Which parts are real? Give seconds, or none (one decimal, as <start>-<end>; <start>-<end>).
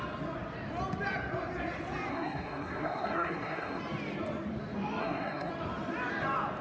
0.0-2.1; 3.8-5.0; 5.5-6.6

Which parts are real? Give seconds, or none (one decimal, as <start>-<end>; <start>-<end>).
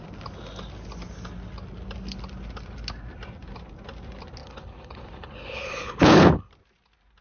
0.0-4.4; 6.5-7.2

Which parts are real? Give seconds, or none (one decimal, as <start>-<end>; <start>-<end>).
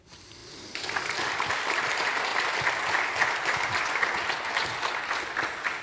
0.0-5.8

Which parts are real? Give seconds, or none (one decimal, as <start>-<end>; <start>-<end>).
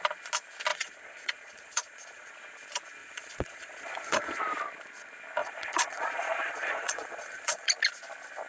0.0-0.7; 2.3-3.0; 4.4-5.4; 7.7-8.5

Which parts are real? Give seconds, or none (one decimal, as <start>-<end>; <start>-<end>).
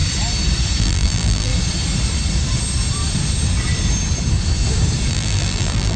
0.0-0.8; 1.5-5.1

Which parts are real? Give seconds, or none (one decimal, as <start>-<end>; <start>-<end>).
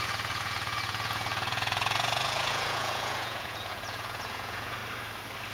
4.8-5.5